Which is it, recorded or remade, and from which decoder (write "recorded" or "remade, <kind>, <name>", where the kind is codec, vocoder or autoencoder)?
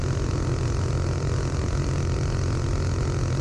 recorded